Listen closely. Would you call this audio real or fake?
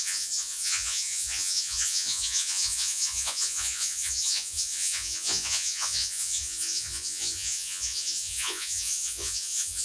fake